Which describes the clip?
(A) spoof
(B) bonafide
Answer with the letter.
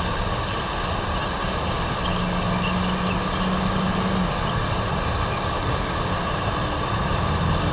B